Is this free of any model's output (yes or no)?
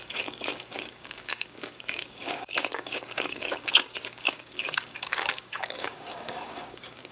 no